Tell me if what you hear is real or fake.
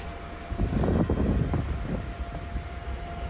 real